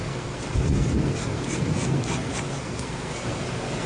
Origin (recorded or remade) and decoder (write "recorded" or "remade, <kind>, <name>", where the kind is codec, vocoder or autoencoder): remade, codec, SNAC